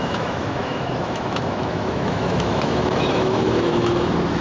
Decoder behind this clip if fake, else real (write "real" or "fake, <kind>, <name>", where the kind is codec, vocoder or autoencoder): fake, autoencoder, DAC-VAE